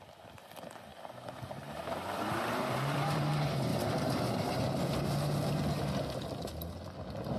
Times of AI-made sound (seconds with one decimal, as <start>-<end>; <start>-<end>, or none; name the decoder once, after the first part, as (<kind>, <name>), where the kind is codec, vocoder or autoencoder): 0.9-3.3 (vocoder, BigVGAN v2); 3.7-4.6